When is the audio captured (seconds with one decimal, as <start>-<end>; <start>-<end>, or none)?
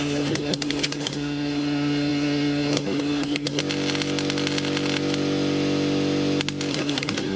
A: 3.6-6.7